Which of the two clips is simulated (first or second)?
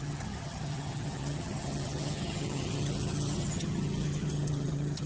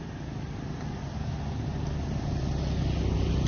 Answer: first